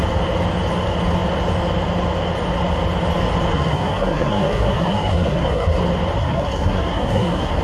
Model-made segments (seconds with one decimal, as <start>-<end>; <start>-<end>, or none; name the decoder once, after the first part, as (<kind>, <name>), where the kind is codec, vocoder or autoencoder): 3.5-5.8 (codec, SNAC); 6.2-7.6